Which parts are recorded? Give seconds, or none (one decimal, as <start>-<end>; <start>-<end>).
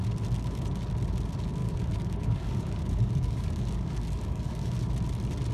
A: 0.0-1.6; 4.9-5.5